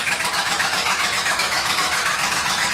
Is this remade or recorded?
remade